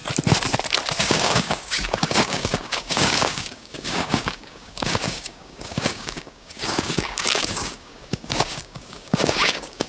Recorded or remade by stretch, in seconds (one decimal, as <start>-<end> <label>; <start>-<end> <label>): 0.0-1.0 recorded; 1.0-9.9 remade